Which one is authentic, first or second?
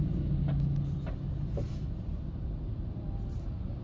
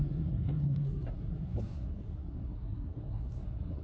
first